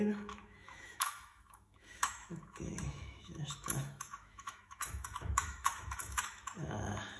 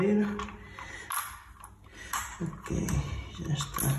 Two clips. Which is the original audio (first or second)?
second